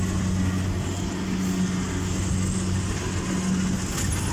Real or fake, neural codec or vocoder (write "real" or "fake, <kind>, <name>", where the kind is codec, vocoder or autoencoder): real